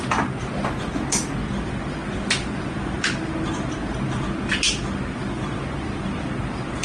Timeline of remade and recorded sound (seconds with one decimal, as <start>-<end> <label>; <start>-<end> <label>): 0.0-6.8 recorded